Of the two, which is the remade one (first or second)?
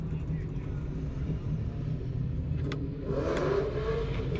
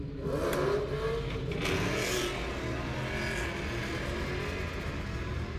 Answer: first